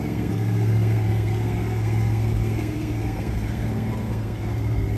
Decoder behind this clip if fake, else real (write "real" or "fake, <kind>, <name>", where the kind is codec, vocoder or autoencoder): fake, codec, SNAC